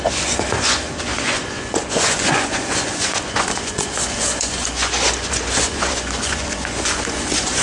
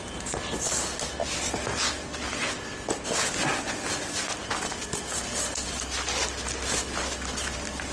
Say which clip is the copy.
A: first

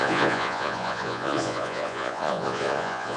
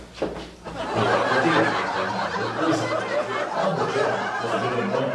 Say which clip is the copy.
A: first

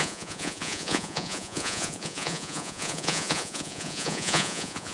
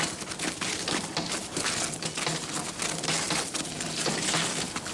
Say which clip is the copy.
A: first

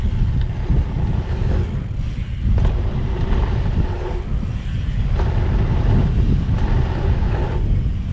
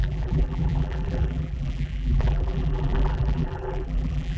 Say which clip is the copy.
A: second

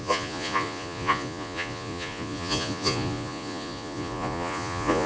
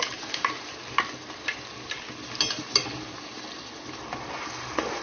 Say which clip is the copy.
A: first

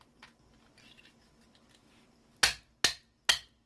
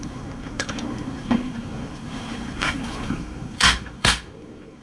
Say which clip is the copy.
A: second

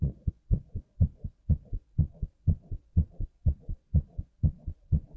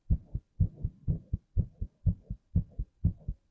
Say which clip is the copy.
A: first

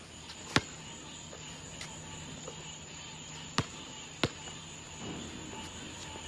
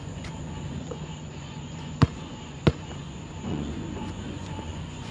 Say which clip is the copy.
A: second